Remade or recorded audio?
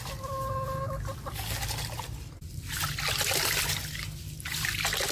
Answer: recorded